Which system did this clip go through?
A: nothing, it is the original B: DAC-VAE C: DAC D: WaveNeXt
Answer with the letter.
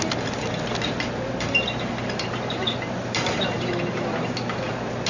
A